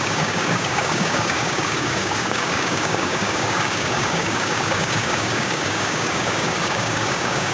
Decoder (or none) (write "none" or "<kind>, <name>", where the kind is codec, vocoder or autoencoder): codec, DAC